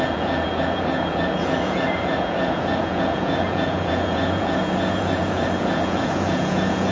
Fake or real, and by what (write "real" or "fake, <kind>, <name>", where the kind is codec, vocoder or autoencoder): fake, vocoder, Vocos